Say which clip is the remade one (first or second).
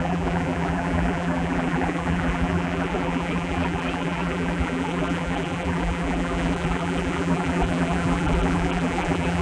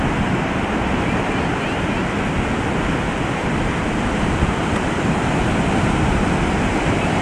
first